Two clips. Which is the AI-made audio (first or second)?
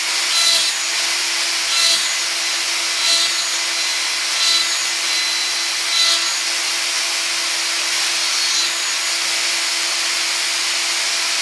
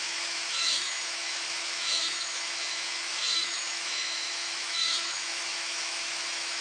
second